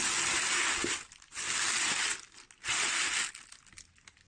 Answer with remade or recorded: recorded